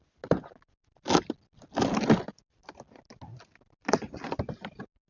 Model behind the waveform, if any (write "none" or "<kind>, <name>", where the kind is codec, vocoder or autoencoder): none